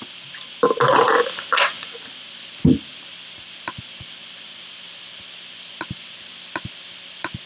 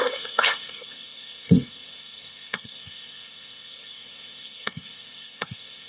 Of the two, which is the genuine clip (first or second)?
first